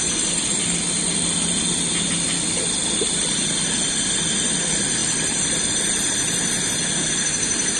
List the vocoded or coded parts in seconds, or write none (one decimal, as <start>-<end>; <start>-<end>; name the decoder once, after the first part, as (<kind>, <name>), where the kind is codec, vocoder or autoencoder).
none